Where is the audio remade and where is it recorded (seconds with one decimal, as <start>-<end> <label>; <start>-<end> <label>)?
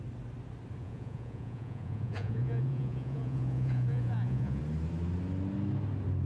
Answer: 0.0-0.8 recorded; 0.8-4.6 remade; 4.6-6.3 recorded